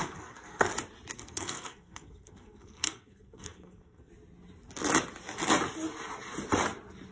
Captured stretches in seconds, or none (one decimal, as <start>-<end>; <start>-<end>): 0.7-1.1; 4.1-7.1